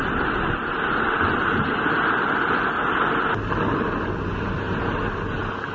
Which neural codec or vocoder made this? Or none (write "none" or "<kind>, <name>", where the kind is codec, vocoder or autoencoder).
none